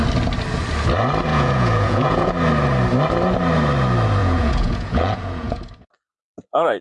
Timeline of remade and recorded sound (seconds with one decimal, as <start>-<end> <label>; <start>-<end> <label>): 0.0-1.3 recorded; 1.3-2.3 remade; 2.3-4.2 recorded; 4.2-5.6 remade; 5.6-6.8 recorded